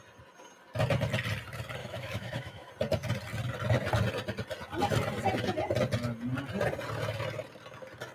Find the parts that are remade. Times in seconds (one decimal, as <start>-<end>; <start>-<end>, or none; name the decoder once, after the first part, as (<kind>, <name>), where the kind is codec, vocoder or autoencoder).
1.8-2.7 (autoencoder, DAC-VAE)